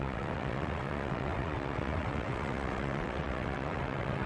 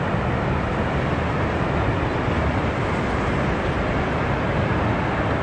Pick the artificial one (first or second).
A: first